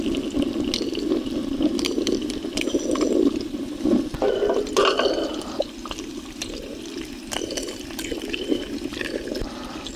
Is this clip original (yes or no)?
yes